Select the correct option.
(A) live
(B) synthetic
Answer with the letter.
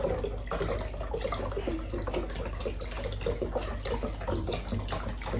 A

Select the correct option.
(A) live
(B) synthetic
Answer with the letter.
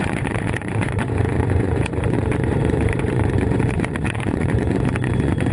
B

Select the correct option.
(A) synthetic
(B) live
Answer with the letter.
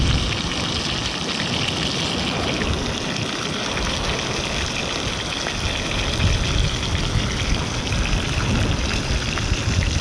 B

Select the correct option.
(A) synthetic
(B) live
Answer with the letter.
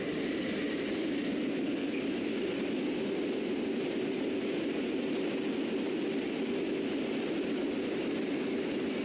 B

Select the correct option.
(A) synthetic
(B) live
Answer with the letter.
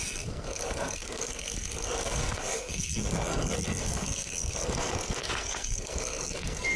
A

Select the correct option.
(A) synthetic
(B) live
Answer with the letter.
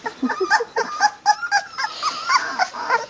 B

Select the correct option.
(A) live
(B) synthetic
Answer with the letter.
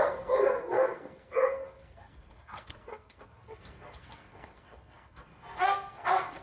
B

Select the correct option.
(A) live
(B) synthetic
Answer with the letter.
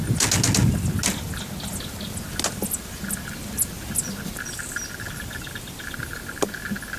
A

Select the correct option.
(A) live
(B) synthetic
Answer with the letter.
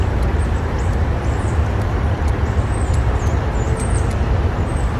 A